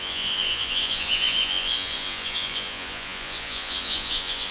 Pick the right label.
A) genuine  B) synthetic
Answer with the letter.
B